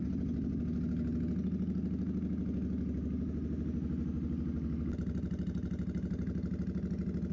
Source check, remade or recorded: recorded